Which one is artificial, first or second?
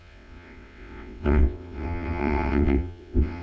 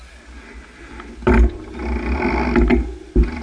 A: first